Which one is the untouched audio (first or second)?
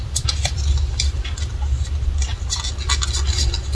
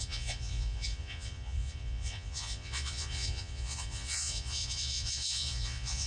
first